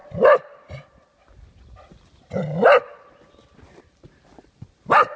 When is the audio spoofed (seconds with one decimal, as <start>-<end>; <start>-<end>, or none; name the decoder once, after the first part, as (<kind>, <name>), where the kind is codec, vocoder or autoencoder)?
none